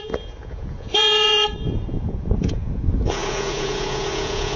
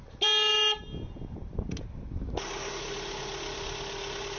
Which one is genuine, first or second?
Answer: second